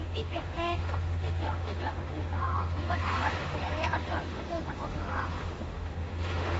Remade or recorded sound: remade